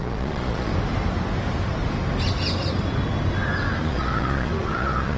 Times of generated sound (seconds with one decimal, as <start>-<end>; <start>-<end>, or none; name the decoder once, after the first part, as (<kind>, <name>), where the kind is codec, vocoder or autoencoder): 0.0-0.7 (vocoder, Vocos); 3.8-5.2